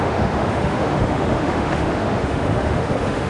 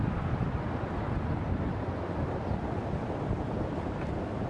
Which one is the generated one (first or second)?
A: first